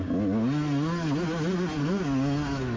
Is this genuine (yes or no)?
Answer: yes